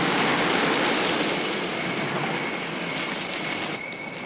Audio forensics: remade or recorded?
recorded